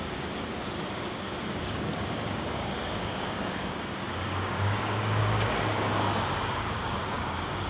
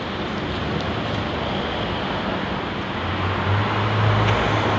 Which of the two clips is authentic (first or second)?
second